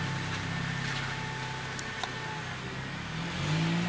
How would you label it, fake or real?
real